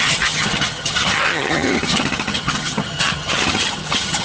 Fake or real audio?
fake